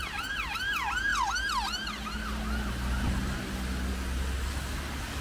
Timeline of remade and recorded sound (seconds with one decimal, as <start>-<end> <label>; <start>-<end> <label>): 0.0-5.2 recorded